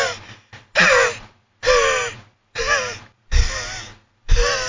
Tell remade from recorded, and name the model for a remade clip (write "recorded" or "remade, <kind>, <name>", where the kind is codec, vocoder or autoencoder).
recorded